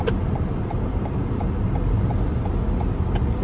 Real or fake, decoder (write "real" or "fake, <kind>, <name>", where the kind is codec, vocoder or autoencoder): real